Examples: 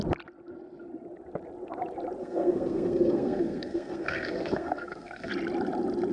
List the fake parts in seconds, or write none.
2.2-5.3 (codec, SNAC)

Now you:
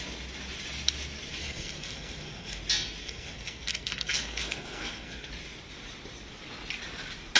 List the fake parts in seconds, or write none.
1.4-2.6 (codec, SNAC); 3.0-5.3

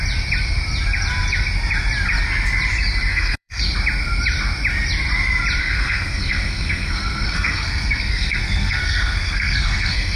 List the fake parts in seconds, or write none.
3.1-3.6 (codec, SNAC); 5.6-10.2

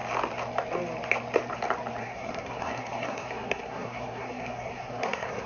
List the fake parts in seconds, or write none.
2.0-5.5 (codec, SNAC)